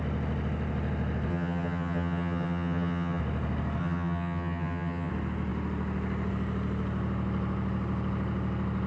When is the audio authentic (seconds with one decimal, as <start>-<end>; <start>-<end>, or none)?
0.0-1.3; 3.2-3.8; 5.1-8.9